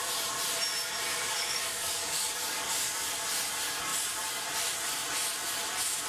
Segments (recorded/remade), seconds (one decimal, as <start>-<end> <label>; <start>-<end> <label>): 0.0-1.1 recorded; 1.1-3.1 remade; 3.1-6.1 recorded